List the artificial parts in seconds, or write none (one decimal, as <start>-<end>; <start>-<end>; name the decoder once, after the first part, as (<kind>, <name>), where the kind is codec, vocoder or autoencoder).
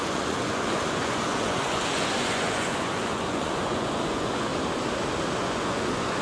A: 0.0-4.5 (vocoder, Vocos); 5.4-6.2